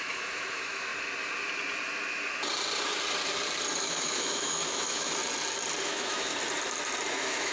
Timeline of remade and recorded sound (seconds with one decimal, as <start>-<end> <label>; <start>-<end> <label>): 0.0-0.9 remade; 0.9-3.8 recorded; 3.8-5.2 remade; 5.2-5.8 recorded; 5.8-6.3 remade; 6.3-7.1 recorded; 7.1-7.5 remade